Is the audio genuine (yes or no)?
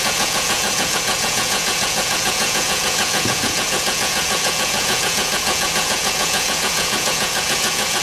no